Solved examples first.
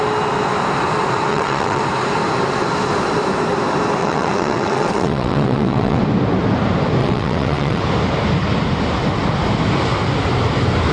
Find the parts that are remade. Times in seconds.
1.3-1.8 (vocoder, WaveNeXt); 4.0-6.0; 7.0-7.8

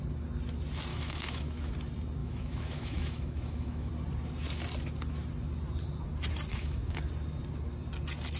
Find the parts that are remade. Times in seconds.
0.9-1.7 (autoencoder, DAC-VAE); 2.2-3.9; 6.5-7.1